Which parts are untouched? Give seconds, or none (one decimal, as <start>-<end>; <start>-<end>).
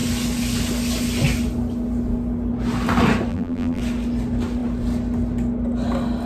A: 0.0-3.3; 3.8-6.3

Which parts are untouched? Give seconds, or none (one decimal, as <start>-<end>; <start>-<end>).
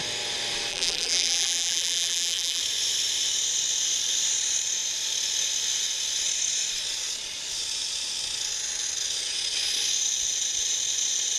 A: 0.0-0.7; 2.6-11.4